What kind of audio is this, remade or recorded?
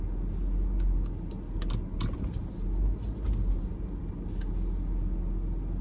recorded